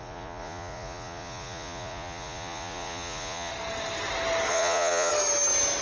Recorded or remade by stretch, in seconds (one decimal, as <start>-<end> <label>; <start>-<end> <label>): 0.0-3.5 remade; 3.5-4.5 recorded; 4.5-5.1 remade; 5.1-5.8 recorded